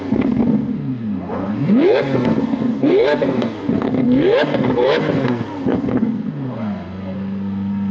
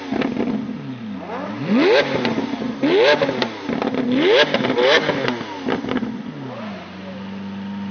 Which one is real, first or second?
second